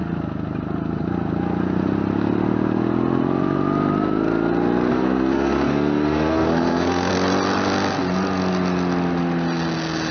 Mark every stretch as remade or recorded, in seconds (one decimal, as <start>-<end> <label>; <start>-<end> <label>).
0.0-4.9 recorded; 4.9-7.1 remade; 7.1-10.1 recorded